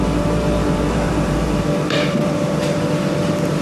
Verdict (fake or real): fake